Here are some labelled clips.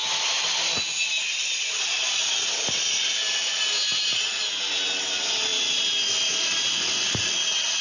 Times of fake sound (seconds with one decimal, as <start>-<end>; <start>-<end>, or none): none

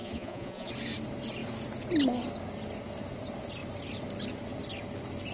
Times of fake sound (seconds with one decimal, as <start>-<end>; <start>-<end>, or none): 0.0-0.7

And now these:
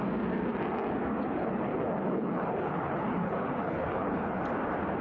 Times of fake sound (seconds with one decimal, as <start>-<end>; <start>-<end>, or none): 1.4-4.4